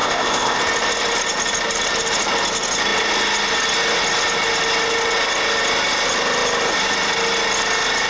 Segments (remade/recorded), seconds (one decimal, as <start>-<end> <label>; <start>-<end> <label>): 0.0-0.6 remade; 0.6-8.1 recorded